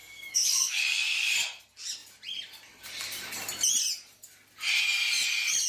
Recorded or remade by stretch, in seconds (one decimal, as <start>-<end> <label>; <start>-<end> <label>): 0.0-1.3 remade; 1.3-5.7 recorded